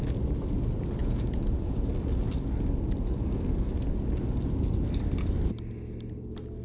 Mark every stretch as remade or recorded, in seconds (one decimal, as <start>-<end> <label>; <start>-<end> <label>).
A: 0.0-1.0 recorded; 1.0-1.9 remade; 1.9-6.6 recorded